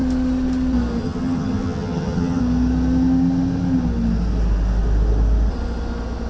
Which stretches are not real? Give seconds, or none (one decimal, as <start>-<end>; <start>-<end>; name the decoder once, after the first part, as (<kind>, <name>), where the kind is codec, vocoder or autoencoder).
1.0-2.4 (vocoder, HiFi-GAN)